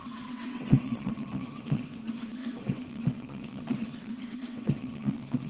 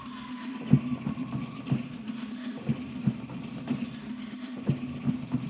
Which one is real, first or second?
second